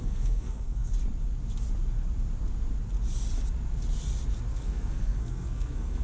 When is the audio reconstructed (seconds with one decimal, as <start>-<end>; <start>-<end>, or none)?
0.0-0.9; 4.5-6.0